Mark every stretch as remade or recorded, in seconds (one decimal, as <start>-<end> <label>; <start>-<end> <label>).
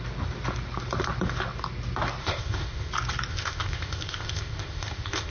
0.0-2.2 recorded; 2.2-2.9 remade; 2.9-3.3 recorded; 3.3-5.3 remade